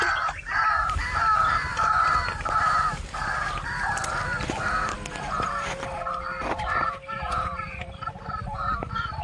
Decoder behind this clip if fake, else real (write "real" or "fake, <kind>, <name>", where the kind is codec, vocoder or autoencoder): real